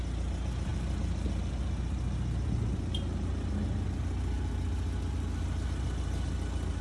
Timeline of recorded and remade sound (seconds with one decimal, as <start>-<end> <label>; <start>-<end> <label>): 0.0-6.8 recorded